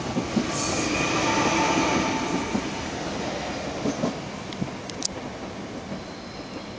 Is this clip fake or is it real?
real